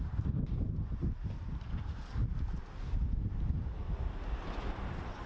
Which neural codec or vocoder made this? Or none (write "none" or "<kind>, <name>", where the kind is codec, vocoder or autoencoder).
none